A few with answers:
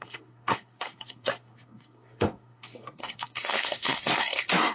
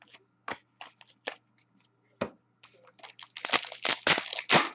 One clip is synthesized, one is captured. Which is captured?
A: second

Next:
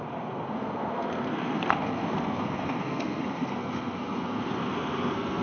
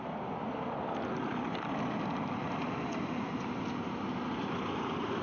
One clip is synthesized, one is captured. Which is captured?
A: second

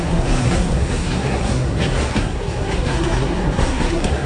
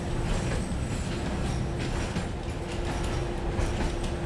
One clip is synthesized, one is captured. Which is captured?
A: second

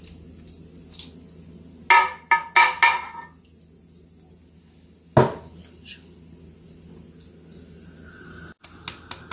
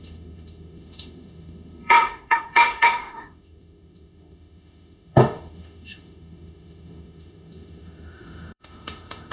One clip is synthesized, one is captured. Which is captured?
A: first